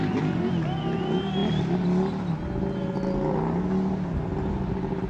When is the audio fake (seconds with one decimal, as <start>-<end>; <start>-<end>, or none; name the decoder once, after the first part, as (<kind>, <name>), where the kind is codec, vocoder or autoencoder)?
none